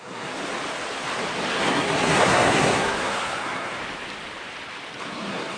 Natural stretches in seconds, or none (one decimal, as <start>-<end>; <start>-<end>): 0.4-1.5; 3.8-5.0